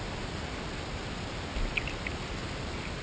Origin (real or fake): real